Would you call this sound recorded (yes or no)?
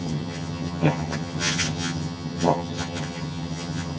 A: no